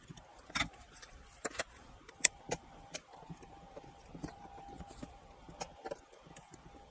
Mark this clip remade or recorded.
remade